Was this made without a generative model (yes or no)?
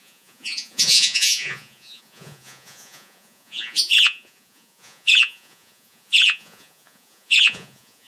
no